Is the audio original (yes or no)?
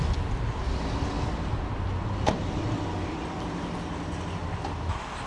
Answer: yes